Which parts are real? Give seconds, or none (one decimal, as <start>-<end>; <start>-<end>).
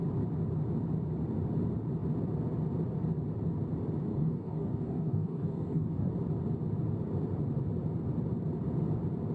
0.0-4.1; 6.1-9.3